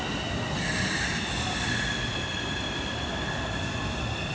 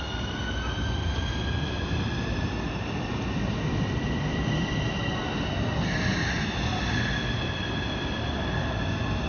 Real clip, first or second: second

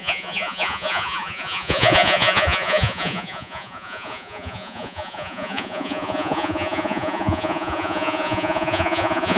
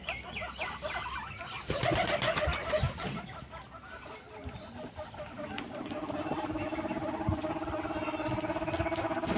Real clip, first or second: second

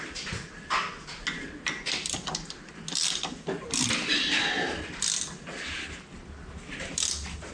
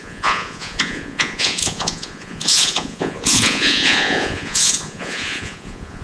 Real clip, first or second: first